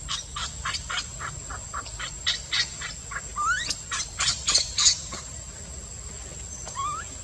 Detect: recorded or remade recorded